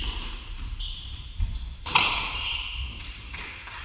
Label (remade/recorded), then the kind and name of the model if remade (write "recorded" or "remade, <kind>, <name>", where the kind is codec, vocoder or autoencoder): remade, vocoder, BigVGAN v2